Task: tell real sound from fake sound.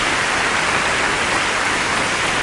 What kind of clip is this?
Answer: fake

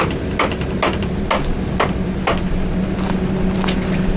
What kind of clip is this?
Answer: real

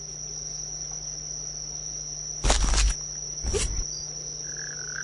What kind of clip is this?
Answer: real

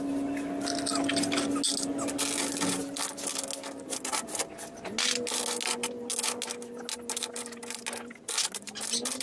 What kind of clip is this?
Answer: real